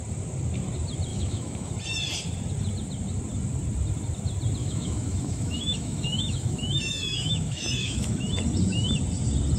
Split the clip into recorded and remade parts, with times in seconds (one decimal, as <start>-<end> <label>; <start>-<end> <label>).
0.0-1.1 recorded; 1.1-1.7 remade; 1.7-4.6 recorded; 4.6-8.3 remade; 8.3-9.6 recorded